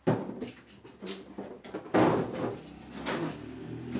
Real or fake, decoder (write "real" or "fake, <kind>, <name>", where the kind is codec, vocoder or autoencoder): real